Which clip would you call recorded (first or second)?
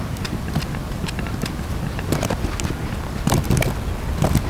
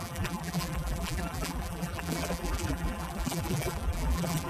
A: first